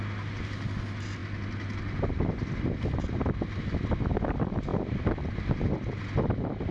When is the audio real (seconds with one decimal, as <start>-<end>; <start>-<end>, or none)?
0.0-6.7